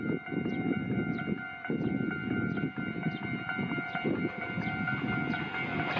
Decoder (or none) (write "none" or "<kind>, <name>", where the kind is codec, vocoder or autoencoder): vocoder, BigVGAN v2